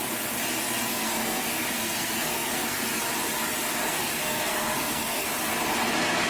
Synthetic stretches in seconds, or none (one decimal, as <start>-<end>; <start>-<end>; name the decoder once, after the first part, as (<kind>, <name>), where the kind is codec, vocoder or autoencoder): 0.9-3.0 (codec, SNAC); 3.8-5.3